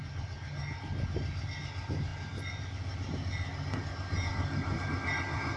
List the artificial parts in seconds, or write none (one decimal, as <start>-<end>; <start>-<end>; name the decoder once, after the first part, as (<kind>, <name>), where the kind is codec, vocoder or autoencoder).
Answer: none